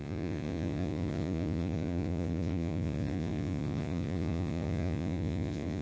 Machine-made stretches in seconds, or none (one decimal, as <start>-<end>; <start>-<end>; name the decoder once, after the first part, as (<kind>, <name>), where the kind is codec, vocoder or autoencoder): 0.0-5.8 (vocoder, Vocos)